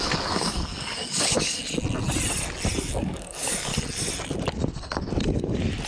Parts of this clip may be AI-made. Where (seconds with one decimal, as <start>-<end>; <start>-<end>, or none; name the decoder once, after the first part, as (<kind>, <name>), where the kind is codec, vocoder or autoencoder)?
0.0-1.6 (codec, DAC); 2.8-3.7